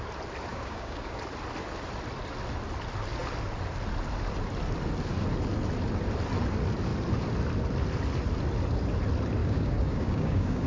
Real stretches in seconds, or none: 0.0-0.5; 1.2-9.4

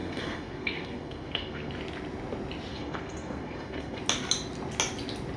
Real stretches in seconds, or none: 1.7-2.7; 4.0-5.4